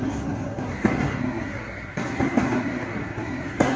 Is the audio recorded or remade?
remade